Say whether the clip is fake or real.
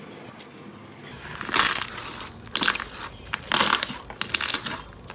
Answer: real